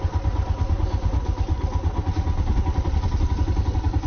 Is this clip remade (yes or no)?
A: no